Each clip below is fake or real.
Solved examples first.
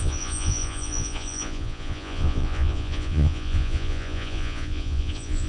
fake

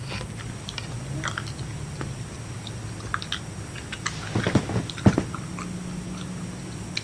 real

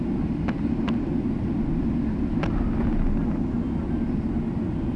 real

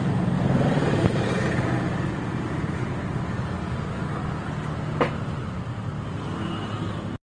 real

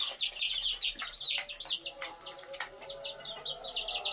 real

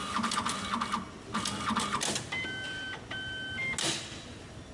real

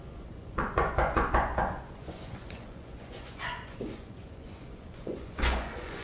fake